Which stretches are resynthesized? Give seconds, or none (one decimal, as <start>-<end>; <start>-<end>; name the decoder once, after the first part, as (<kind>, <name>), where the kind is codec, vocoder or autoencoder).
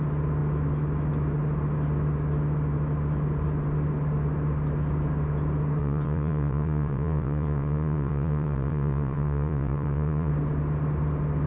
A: 5.8-10.3 (vocoder, WaveNeXt)